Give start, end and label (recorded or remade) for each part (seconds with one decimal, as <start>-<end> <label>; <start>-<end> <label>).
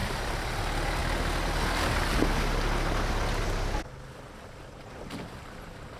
0.0-0.5 remade; 0.5-6.0 recorded